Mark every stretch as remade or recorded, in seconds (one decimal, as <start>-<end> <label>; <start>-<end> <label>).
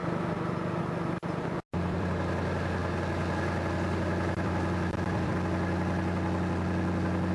0.0-7.3 recorded